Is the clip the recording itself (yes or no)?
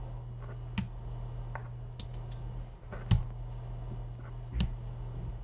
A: yes